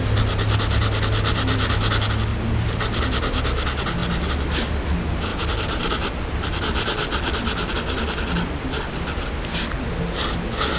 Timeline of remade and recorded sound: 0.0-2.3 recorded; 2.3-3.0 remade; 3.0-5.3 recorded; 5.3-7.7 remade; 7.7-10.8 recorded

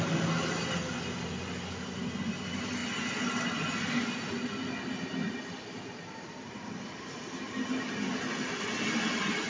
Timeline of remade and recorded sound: 0.0-9.5 recorded